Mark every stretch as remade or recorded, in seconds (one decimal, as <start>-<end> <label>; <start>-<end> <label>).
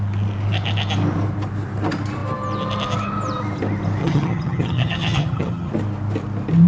0.0-4.0 recorded; 4.0-5.7 remade; 5.7-6.7 recorded